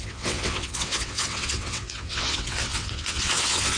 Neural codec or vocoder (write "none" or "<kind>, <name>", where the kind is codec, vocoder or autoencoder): vocoder, WaveNeXt